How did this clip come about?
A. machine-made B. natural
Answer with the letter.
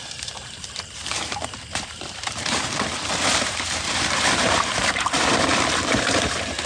A